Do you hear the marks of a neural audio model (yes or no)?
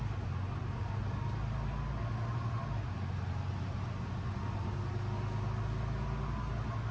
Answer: no